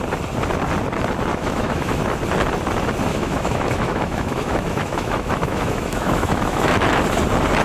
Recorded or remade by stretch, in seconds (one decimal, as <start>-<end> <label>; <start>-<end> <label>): 0.0-1.3 recorded; 1.3-2.0 remade; 2.0-3.1 recorded; 3.1-7.0 remade; 7.0-7.6 recorded